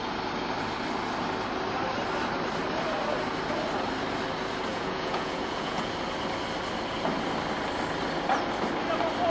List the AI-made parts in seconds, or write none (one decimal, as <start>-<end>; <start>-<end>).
4.7-5.9